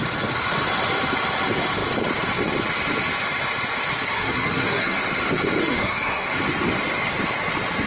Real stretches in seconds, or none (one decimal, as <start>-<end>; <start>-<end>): 0.0-3.9; 5.0-5.6; 6.4-7.9

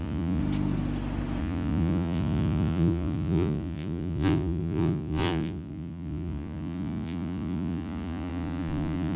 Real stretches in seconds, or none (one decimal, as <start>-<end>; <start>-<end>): 0.4-1.4

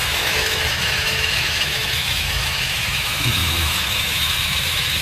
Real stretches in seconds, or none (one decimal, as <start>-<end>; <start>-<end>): none

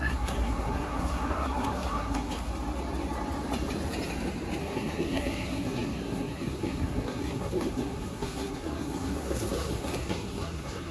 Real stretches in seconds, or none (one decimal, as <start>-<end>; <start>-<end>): 2.5-4.6

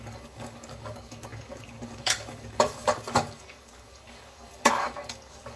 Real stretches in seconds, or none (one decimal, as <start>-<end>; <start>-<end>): none

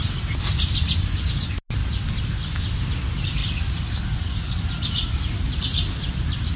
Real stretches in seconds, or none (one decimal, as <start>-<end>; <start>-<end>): 0.0-1.8; 2.6-6.6

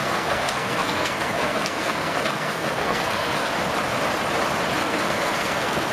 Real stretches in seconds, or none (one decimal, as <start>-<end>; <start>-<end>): 3.5-4.8

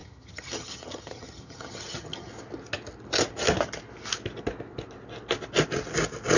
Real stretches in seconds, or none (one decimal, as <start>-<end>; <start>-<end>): 2.3-6.4